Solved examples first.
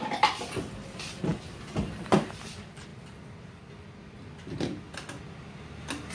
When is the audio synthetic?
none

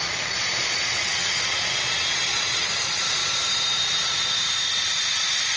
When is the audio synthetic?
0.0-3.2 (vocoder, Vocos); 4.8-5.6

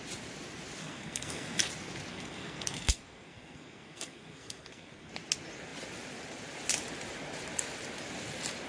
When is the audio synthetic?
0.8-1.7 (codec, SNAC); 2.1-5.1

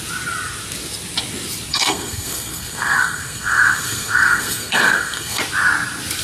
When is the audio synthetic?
1.7-5.4 (codec, SNAC)

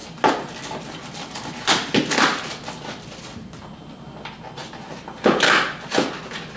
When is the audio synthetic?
none

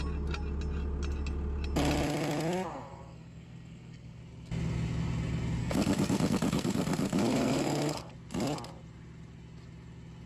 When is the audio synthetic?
2.7-4.2 (codec, SNAC); 5.6-8.1

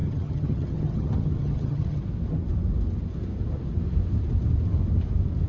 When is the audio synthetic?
0.0-2.0 (vocoder, HiFi-GAN)

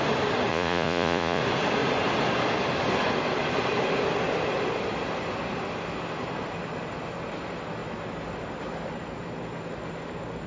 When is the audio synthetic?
0.5-1.4 (vocoder, Vocos)